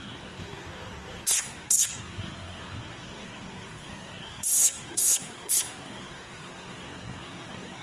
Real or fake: fake